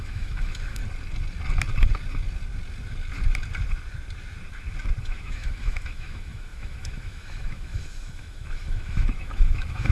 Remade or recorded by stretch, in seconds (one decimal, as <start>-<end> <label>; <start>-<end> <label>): 0.0-0.8 remade; 0.8-5.0 recorded; 5.0-9.9 remade

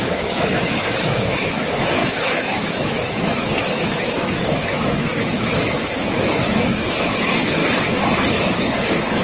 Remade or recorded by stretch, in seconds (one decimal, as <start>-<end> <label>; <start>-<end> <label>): 0.0-7.6 remade; 7.6-8.3 recorded; 8.3-9.2 remade

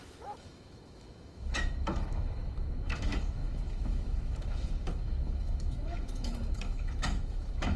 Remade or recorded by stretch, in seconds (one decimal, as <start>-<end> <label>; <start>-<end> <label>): 0.0-7.8 remade

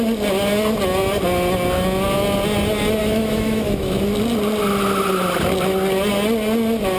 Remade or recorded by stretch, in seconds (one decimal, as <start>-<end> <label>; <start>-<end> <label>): 0.0-3.0 recorded; 3.0-4.0 remade; 4.0-7.0 recorded